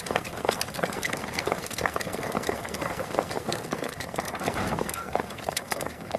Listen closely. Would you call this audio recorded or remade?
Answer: remade